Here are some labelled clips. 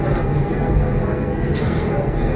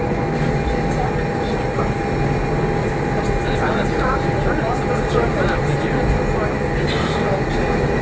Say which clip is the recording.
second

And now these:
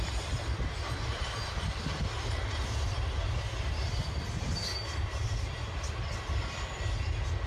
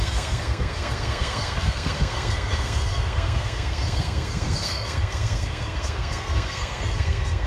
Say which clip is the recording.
first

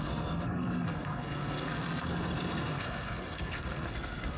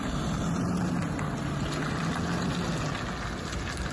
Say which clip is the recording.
second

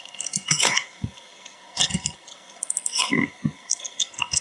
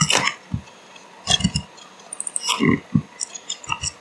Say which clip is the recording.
second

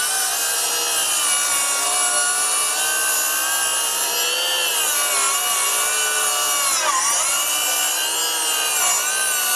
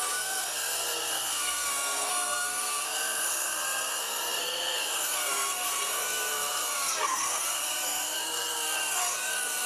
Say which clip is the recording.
first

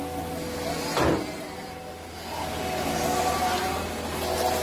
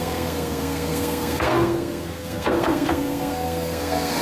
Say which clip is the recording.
first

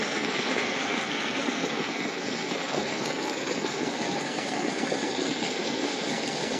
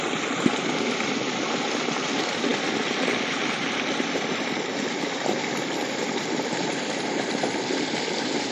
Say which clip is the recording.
second